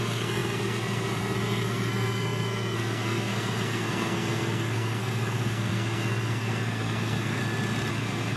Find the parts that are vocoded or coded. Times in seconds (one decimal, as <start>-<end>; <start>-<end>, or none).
0.0-7.4; 7.9-8.4